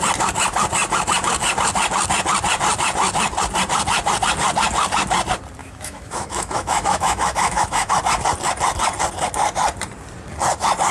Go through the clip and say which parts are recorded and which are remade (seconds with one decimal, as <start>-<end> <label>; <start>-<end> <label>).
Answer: 0.0-5.6 recorded; 5.6-7.9 remade; 7.9-10.9 recorded